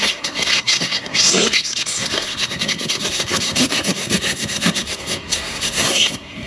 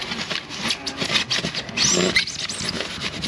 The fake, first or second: first